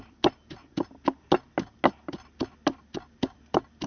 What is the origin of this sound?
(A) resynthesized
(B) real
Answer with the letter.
B